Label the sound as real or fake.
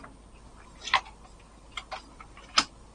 real